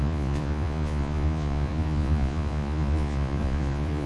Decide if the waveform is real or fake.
fake